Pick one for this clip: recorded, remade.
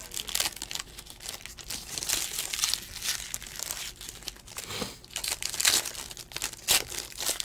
recorded